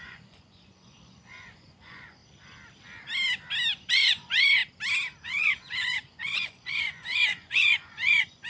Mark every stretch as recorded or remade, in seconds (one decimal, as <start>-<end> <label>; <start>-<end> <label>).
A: 0.0-2.2 remade; 2.2-3.9 recorded; 3.9-4.6 remade; 4.6-5.2 recorded; 5.2-8.5 remade